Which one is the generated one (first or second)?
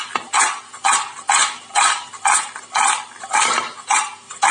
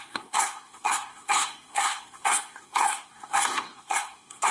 second